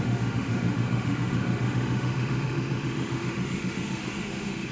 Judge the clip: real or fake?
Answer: fake